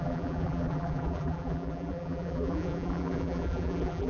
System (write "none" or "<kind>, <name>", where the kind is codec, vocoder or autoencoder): vocoder, BigVGAN v2